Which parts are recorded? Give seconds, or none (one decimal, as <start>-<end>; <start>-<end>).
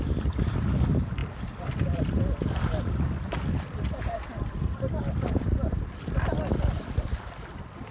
1.2-5.9